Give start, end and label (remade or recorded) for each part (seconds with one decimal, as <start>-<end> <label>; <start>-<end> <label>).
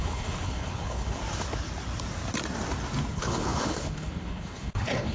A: 0.0-1.2 remade; 1.2-3.1 recorded; 3.1-5.1 remade